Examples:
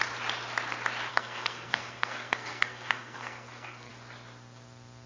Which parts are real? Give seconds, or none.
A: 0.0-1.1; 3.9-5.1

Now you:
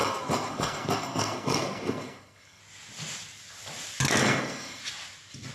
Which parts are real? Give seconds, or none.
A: 2.6-4.2; 4.8-5.5

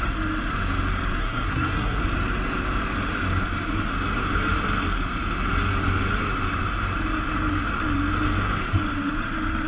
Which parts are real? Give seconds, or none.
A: 0.0-1.2; 2.0-9.7